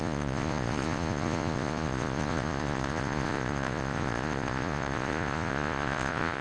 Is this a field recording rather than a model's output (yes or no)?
no